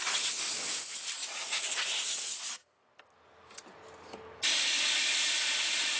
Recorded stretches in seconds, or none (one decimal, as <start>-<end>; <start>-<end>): 0.0-6.0